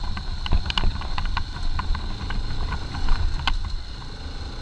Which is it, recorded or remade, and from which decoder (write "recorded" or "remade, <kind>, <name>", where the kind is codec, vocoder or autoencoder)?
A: recorded